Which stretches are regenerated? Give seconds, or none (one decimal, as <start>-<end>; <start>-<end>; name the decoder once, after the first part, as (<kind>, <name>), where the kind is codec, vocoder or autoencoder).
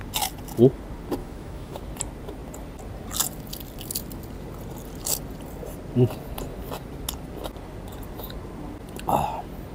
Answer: 1.2-1.8 (autoencoder, DAC-VAE)